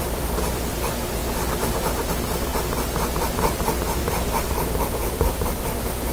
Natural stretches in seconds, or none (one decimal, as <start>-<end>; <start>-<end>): 1.2-2.1